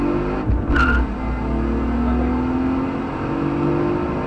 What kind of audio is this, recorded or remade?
recorded